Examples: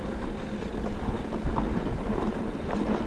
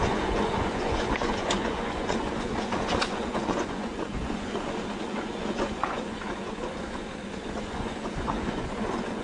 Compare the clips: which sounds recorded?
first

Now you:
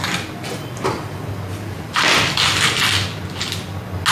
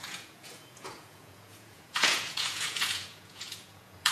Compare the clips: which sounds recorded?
first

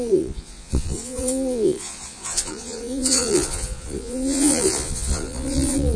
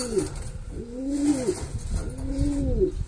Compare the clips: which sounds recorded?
second